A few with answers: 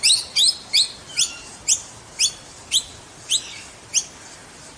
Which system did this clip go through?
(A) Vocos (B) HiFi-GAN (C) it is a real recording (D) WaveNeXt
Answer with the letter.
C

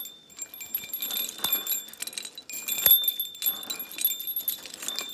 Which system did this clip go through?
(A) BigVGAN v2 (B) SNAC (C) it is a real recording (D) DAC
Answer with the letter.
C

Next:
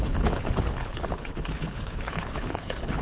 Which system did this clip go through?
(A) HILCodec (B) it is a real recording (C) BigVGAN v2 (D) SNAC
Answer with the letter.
A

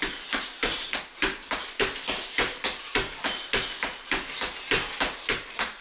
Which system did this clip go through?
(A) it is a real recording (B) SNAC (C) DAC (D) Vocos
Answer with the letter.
A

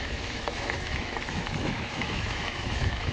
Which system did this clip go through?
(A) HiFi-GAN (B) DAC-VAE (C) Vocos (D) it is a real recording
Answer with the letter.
B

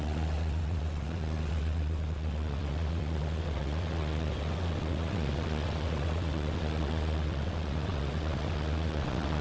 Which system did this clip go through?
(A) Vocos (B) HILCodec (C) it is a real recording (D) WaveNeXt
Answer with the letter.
D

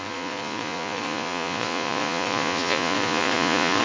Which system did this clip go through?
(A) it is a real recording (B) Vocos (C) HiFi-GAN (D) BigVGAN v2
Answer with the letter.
B